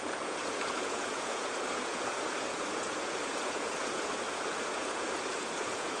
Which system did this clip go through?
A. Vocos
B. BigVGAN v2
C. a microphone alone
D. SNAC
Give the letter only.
A